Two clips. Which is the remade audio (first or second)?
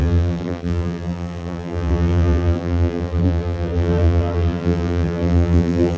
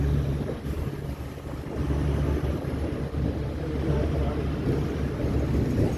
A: first